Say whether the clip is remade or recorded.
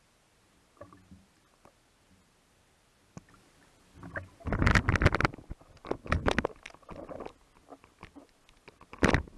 recorded